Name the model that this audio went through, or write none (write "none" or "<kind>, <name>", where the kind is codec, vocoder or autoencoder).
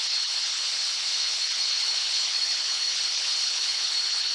codec, HILCodec